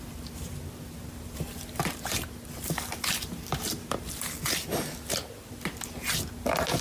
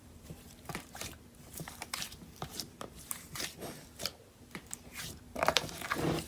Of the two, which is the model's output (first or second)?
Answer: second